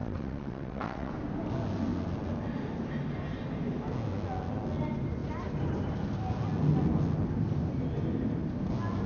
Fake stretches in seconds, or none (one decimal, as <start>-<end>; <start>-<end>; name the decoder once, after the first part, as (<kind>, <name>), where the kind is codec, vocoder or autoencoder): 0.0-1.1 (vocoder, WaveNeXt)